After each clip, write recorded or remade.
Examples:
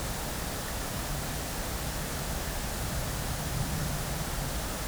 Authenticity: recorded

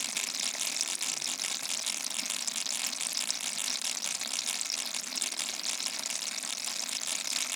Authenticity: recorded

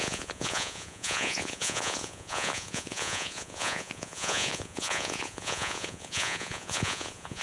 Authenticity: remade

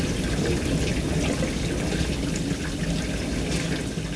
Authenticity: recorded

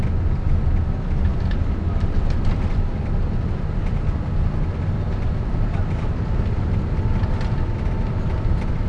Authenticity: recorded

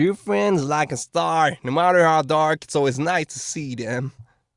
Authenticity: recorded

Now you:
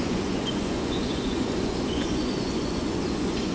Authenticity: remade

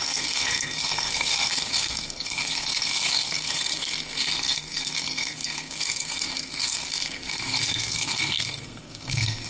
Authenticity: remade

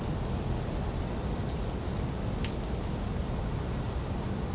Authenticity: recorded